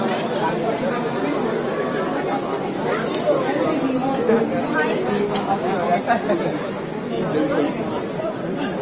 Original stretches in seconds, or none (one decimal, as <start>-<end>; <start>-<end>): 0.0-8.8